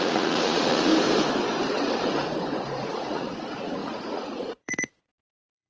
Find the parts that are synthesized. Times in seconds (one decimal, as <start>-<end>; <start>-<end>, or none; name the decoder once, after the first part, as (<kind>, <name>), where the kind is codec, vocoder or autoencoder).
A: 0.0-0.9 (vocoder, Vocos); 2.8-5.7